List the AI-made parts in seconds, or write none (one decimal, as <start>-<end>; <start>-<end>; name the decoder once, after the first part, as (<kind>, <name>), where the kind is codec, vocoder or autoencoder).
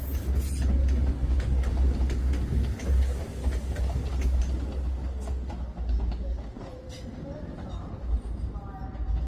0.8-4.4 (codec, DAC)